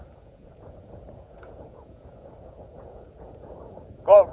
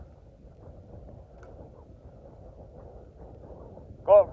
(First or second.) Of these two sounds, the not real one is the first